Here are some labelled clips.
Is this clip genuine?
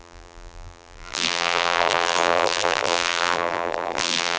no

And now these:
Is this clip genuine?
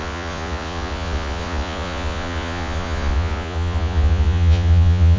no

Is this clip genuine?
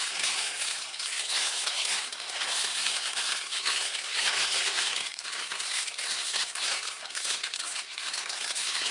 no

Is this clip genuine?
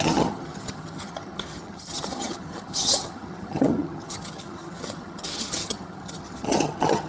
no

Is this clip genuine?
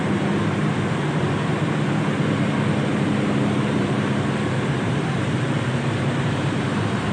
no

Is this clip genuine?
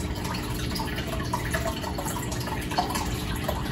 yes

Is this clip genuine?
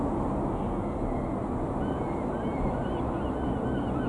yes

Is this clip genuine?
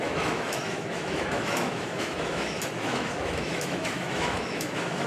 no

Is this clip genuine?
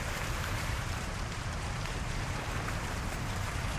no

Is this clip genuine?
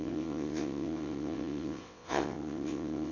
no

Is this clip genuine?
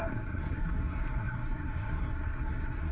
no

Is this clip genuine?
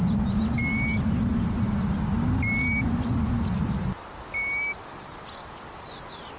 yes